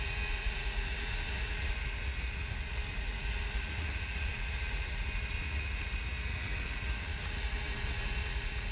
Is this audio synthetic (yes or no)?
yes